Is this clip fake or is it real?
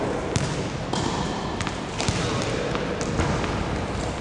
real